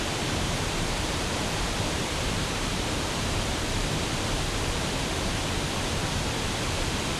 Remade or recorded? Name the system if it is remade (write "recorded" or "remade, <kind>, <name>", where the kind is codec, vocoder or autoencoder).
remade, vocoder, BigVGAN v2